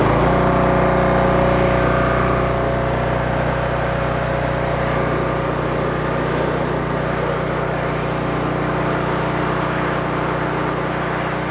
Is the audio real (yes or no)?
yes